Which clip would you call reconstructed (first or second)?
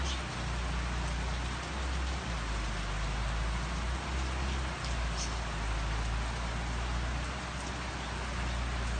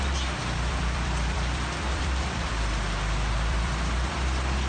second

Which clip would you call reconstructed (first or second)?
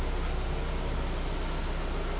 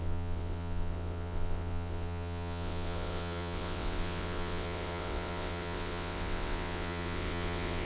second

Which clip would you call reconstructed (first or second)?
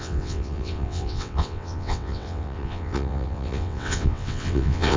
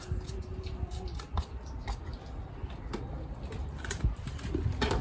first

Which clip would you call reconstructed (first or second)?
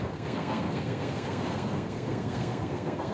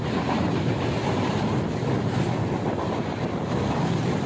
first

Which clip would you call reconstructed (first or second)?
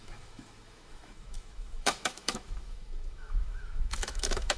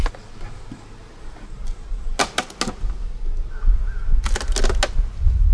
first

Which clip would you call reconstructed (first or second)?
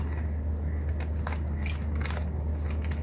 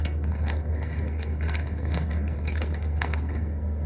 second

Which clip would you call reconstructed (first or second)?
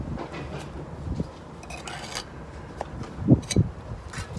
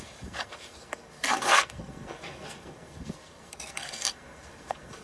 second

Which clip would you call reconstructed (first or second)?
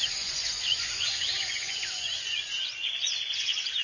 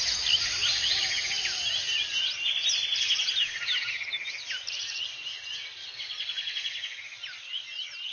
first